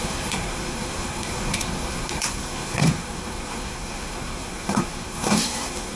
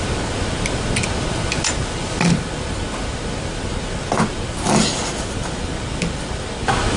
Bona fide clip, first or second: second